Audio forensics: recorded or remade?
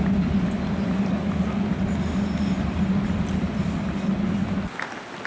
recorded